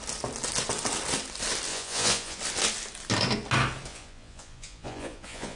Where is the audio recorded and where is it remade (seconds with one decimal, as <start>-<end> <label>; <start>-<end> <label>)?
0.0-1.7 recorded; 1.7-2.4 remade; 2.4-3.9 recorded; 3.9-5.6 remade